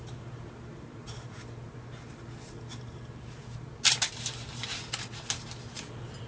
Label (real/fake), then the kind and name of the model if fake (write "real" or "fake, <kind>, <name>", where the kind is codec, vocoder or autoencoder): real